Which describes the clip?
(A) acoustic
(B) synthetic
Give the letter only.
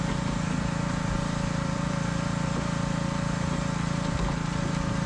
B